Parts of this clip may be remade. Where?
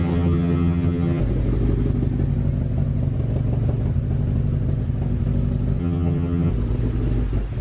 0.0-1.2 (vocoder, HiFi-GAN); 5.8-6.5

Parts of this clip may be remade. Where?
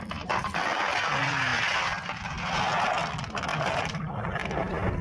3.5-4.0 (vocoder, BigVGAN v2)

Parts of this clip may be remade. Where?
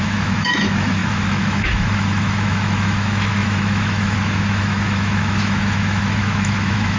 0.0-7.0 (autoencoder, DAC-VAE)